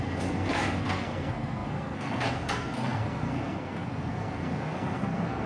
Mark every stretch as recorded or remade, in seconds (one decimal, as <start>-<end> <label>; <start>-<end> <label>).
0.0-5.5 remade